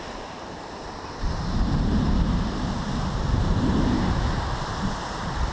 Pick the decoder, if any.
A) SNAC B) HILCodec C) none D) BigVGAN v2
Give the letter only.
D